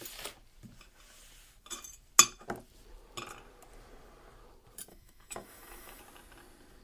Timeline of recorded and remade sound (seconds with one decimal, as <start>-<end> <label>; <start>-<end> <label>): 0.0-4.9 recorded; 4.9-6.0 remade; 6.0-6.8 recorded